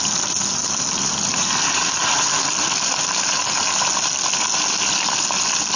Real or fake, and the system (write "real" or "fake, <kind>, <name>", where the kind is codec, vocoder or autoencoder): real